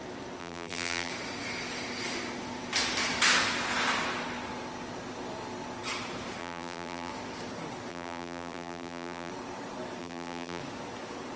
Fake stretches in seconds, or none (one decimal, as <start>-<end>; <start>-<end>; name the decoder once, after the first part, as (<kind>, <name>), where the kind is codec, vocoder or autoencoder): 0.4-1.1 (vocoder, BigVGAN v2); 6.4-7.1; 7.9-9.3; 10.0-10.6